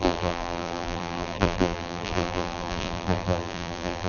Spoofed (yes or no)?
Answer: yes